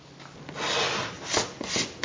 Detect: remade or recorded recorded